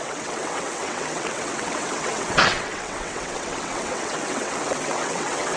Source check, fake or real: fake